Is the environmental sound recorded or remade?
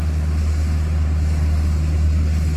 recorded